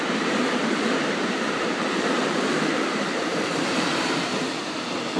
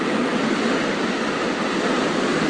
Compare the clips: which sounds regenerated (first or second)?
first